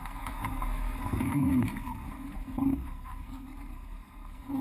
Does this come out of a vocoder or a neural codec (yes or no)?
yes